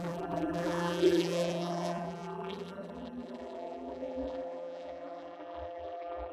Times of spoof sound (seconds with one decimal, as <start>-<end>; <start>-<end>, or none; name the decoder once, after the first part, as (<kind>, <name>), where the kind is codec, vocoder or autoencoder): 0.0-6.3 (vocoder, BigVGAN v2)